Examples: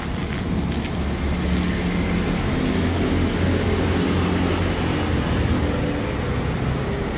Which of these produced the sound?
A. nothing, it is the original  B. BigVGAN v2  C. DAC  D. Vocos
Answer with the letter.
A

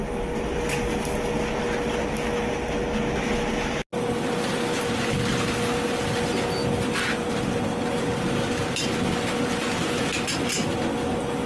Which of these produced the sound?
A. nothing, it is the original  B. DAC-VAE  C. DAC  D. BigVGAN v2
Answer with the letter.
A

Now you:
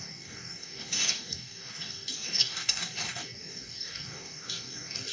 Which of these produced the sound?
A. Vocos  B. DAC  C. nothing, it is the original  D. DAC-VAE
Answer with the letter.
B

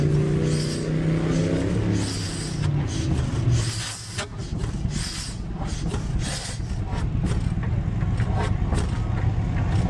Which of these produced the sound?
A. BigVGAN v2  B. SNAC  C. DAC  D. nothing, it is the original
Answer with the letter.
D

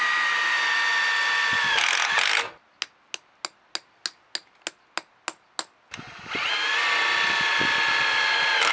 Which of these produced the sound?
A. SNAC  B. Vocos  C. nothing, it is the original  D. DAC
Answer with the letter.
C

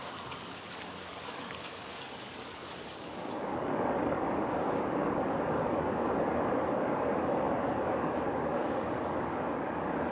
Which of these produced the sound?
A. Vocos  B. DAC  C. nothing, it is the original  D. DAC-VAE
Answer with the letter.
B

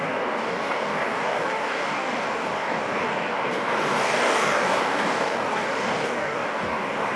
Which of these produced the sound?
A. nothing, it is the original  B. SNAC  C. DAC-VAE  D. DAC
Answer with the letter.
D